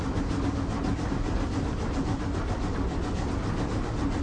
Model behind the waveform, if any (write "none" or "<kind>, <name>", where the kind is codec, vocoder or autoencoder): none